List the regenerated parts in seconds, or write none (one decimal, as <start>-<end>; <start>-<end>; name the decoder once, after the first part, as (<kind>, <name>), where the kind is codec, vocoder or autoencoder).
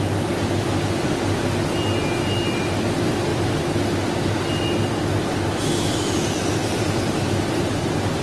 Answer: none